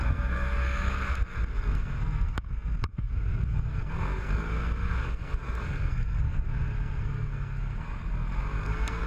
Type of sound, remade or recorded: remade